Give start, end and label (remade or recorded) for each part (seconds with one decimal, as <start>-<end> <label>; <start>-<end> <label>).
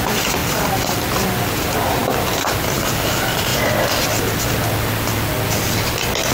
0.0-6.3 recorded